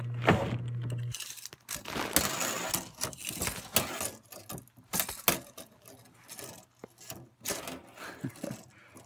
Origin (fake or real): real